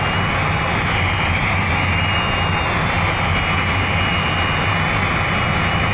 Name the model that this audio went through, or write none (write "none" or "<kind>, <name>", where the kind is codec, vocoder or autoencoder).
none